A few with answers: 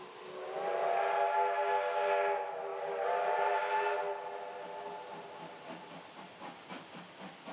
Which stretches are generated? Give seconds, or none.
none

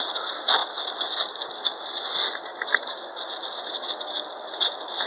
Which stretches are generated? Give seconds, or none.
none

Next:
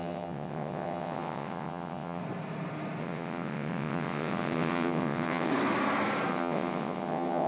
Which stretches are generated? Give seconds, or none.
0.0-2.2 (vocoder, WaveNeXt); 3.0-5.5; 6.3-7.5

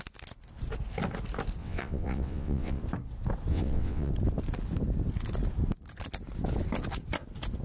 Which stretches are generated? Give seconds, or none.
1.6-2.8 (vocoder, WaveNeXt); 3.5-4.1

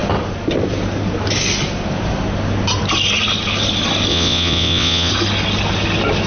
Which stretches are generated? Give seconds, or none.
4.1-5.1 (vocoder, WaveNeXt)

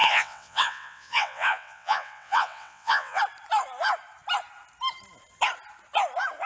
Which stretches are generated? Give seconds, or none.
0.0-3.2 (vocoder, WaveNeXt)

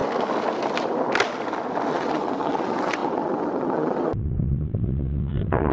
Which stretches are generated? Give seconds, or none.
1.9-5.7 (vocoder, WaveNeXt)